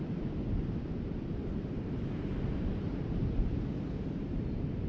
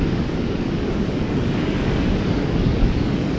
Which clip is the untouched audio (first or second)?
first